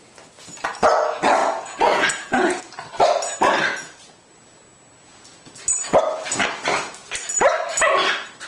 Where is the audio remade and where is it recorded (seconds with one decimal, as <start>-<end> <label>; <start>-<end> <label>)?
0.0-1.4 recorded; 1.4-2.6 remade; 2.6-3.7 recorded; 3.7-4.3 remade; 4.3-8.5 recorded